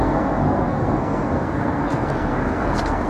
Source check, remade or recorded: remade